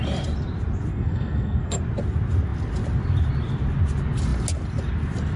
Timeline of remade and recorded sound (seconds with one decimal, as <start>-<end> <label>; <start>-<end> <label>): 0.0-0.9 recorded; 0.9-1.8 remade; 1.8-5.4 recorded